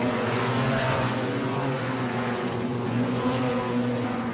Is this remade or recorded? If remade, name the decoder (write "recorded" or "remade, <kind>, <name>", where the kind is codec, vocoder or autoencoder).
remade, vocoder, Vocos